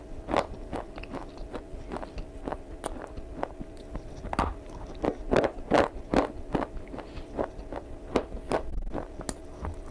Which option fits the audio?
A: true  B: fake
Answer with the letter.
A